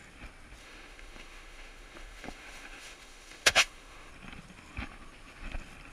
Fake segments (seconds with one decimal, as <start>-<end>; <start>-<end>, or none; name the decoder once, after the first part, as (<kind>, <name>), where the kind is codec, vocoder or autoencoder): 0.6-4.1 (autoencoder, DAC-VAE)